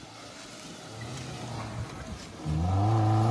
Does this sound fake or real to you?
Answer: real